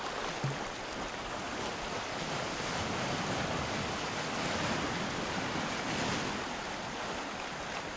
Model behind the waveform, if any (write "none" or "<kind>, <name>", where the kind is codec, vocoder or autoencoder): none